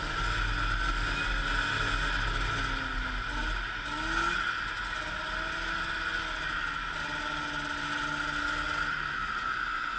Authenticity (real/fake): real